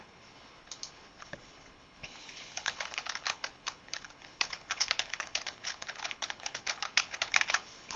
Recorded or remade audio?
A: remade